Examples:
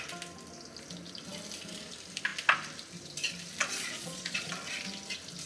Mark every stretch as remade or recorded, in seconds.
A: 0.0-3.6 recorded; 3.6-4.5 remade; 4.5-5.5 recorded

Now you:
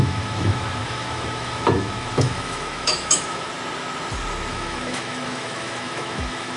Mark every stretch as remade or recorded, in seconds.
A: 0.0-3.5 remade; 3.5-4.5 recorded; 4.5-6.6 remade

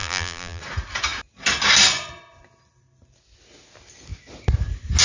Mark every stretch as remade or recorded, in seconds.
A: 0.0-0.6 remade; 0.6-5.0 recorded

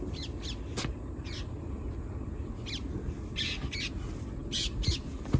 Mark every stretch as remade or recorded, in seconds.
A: 0.0-5.4 recorded